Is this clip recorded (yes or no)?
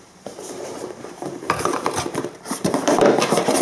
no